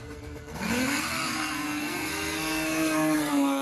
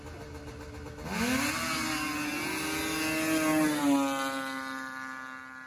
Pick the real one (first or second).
second